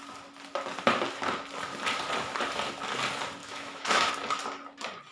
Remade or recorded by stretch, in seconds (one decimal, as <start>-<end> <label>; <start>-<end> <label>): 0.0-3.4 recorded; 3.4-4.1 remade; 4.1-5.1 recorded